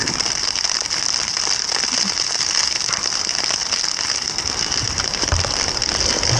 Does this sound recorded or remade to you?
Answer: recorded